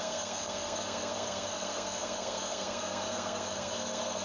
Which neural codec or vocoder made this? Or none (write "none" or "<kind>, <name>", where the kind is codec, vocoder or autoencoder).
codec, SNAC